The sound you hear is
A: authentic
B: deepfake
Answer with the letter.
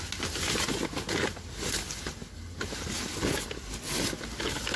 A